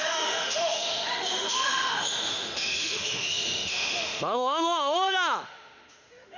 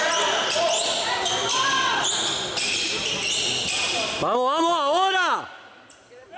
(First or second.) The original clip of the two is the second